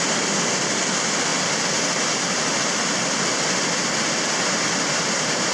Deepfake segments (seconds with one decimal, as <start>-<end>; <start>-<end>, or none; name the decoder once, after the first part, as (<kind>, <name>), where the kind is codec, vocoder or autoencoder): none